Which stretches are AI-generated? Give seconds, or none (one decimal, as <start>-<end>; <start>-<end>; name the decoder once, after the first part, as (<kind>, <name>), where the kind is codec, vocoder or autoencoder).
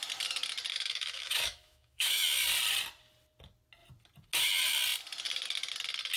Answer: 0.7-2.2 (autoencoder, DAC-VAE)